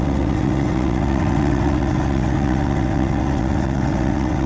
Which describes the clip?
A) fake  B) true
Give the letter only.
A